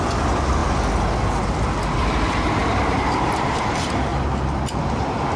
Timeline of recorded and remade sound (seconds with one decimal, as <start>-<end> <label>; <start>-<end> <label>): 0.0-0.6 remade; 0.6-1.8 recorded; 1.8-4.1 remade; 4.1-5.4 recorded

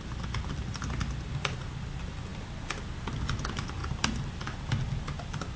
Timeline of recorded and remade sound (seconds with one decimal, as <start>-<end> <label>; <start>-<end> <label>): 0.0-5.6 recorded

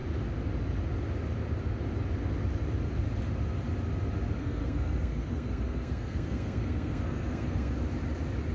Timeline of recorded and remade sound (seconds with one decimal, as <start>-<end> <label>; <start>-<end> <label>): 0.0-4.4 recorded; 4.4-7.7 remade; 7.7-8.5 recorded

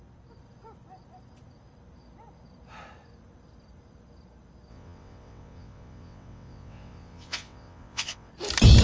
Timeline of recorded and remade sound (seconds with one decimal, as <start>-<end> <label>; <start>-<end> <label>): 0.0-4.7 recorded; 4.7-8.3 remade; 8.3-8.8 recorded